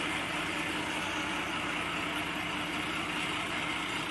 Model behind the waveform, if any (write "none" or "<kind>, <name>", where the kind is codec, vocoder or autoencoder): none